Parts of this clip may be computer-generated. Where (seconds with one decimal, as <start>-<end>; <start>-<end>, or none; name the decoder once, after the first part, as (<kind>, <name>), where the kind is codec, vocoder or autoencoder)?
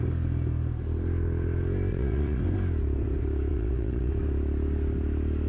1.9-2.4 (vocoder, Vocos); 3.5-4.1